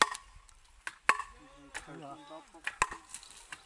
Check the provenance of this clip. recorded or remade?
recorded